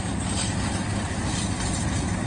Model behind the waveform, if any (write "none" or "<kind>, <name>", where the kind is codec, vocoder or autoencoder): none